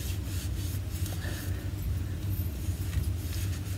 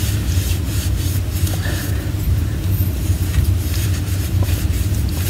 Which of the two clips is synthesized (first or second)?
second